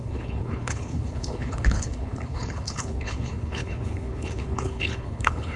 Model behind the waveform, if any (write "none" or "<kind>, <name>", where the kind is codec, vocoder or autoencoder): codec, HILCodec